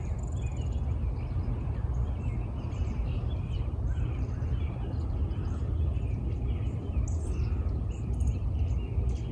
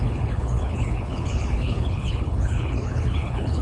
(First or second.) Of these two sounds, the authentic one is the first